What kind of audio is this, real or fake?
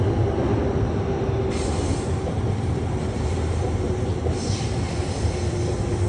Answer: real